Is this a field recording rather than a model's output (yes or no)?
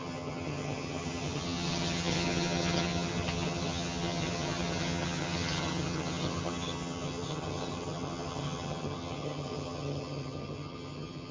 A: no